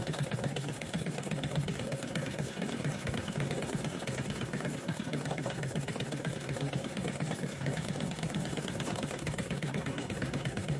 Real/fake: fake